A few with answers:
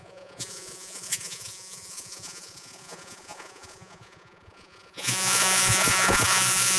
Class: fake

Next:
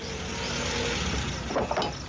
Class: real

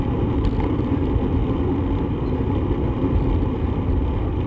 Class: real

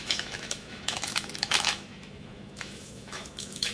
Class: fake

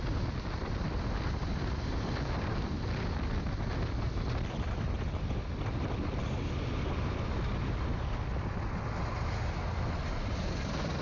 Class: real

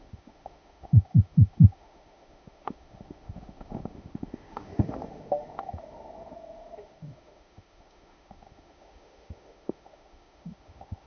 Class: fake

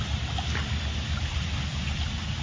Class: real